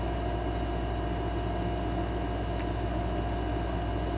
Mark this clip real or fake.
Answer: real